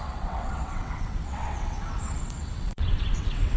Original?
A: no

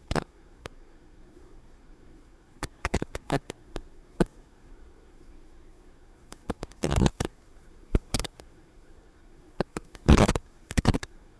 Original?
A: no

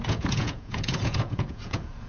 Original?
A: no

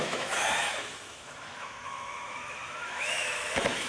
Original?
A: no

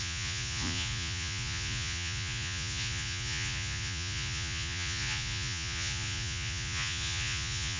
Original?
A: no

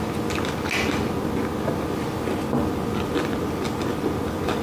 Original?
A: yes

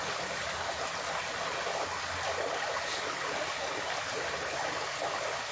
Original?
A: yes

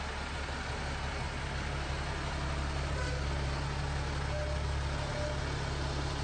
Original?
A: yes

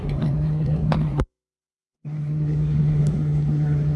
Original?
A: no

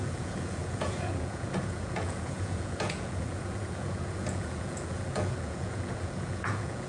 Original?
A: no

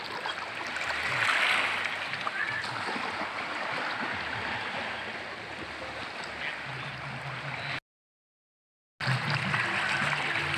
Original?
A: yes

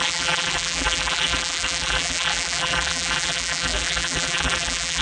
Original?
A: no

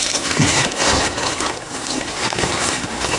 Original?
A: no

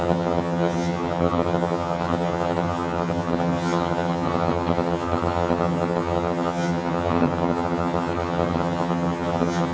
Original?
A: no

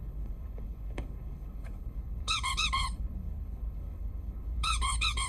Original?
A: no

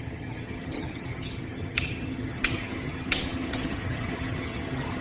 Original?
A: no